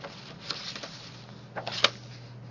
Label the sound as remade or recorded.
recorded